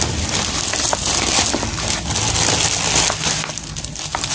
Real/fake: real